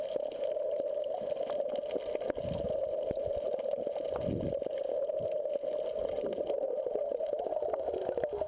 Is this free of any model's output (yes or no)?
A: yes